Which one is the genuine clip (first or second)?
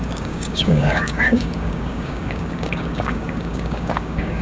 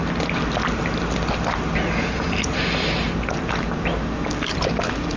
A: second